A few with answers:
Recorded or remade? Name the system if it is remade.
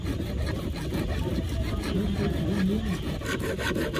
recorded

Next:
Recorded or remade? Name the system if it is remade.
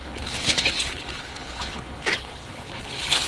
remade, codec, HILCodec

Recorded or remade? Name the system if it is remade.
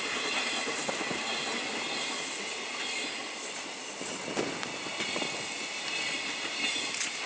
recorded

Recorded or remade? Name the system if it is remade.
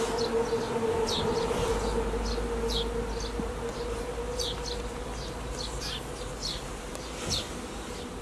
recorded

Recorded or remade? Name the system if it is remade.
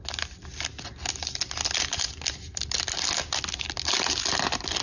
recorded